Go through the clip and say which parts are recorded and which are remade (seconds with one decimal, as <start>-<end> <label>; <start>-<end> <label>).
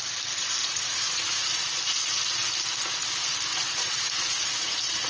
0.0-0.6 recorded; 0.6-1.7 remade; 1.7-3.5 recorded; 3.5-4.4 remade; 4.4-5.1 recorded